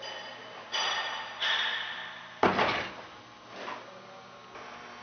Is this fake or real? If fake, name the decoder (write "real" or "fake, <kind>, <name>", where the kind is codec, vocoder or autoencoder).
real